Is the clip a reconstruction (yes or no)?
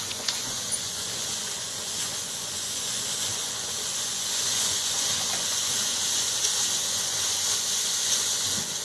yes